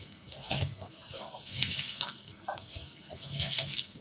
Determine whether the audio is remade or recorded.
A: remade